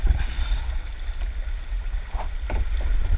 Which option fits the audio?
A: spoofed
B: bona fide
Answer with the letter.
B